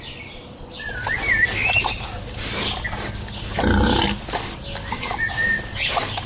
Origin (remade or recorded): recorded